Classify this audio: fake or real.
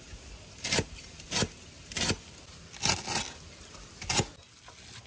real